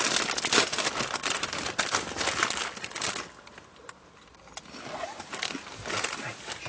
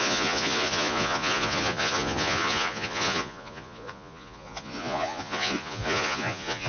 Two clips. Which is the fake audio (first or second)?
second